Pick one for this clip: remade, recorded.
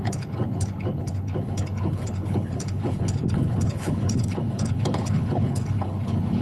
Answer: remade